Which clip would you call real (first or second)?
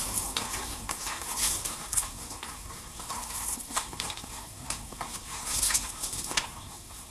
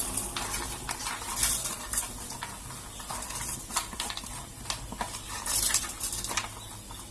second